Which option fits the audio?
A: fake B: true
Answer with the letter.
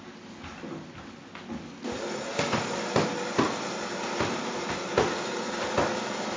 B